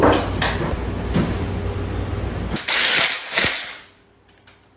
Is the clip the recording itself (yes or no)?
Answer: yes